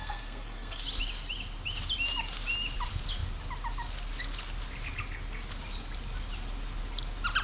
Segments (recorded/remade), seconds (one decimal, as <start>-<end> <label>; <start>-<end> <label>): 0.0-0.8 remade; 0.8-7.4 recorded